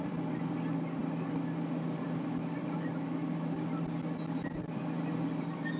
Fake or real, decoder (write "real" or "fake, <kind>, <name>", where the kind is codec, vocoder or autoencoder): real